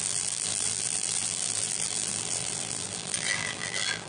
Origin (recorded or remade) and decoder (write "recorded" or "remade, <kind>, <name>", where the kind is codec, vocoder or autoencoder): remade, vocoder, BigVGAN v2